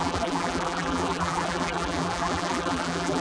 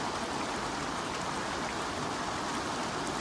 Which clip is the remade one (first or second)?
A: first